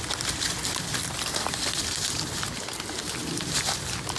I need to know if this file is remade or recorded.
recorded